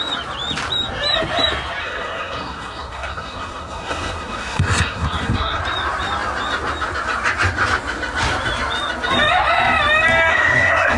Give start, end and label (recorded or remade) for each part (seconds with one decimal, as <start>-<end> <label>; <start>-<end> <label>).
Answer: 0.0-1.8 recorded; 1.8-5.6 remade; 5.6-10.3 recorded; 10.3-11.0 remade